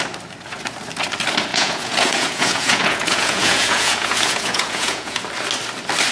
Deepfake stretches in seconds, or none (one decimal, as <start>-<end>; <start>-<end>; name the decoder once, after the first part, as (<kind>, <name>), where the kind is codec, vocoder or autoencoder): 1.5-5.2 (vocoder, Vocos)